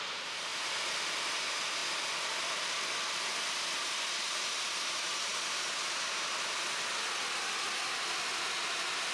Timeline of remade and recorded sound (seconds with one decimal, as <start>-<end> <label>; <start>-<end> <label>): 0.0-9.1 recorded